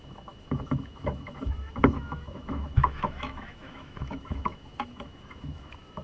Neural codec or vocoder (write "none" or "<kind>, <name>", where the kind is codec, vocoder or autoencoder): autoencoder, DAC-VAE